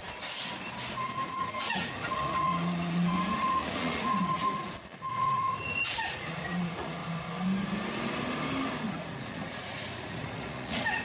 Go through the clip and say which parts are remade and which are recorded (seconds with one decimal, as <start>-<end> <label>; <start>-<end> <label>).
0.0-0.9 recorded; 0.9-7.0 remade; 7.0-8.9 recorded; 8.9-11.0 remade